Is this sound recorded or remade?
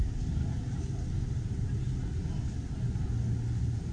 recorded